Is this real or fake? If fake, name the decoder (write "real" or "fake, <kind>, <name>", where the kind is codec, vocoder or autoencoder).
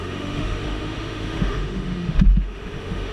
fake, autoencoder, DAC-VAE